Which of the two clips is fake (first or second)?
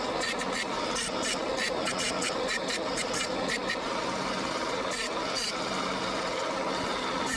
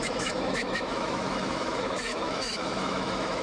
second